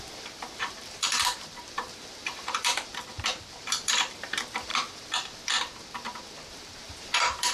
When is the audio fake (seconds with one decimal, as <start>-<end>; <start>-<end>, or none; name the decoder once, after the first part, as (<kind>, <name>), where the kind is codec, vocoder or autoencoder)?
0.0-4.7 (vocoder, BigVGAN v2); 6.5-7.5